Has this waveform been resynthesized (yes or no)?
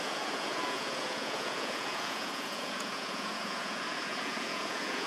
yes